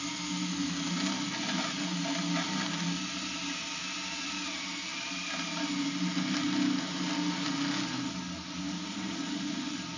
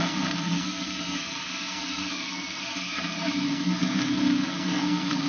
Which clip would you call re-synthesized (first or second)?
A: second